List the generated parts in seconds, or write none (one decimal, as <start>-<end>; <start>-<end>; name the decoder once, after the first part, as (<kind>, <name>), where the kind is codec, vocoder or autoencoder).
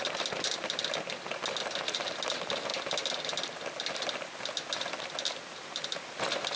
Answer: none